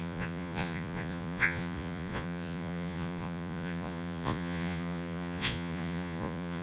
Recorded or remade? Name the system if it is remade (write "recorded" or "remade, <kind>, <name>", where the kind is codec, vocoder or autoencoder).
remade, vocoder, Vocos